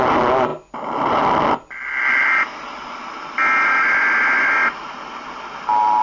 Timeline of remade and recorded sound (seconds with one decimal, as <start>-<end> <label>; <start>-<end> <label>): 0.0-6.0 recorded